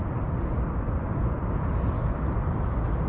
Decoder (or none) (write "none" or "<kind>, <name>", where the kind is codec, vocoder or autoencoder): none